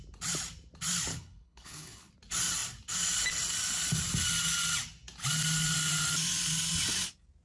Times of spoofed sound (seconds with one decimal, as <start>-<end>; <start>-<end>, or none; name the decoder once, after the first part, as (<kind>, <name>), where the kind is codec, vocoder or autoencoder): 1.1-2.1 (codec, HILCodec)